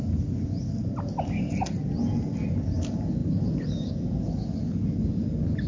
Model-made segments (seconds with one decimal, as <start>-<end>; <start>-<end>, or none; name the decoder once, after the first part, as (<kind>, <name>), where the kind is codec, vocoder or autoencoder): none